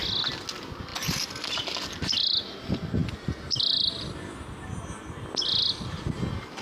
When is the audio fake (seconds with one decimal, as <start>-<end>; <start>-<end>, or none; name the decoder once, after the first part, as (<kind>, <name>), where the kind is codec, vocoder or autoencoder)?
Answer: none